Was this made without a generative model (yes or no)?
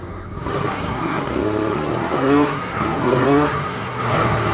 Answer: no